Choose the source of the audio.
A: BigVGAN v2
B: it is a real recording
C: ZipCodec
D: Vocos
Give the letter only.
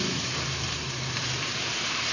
A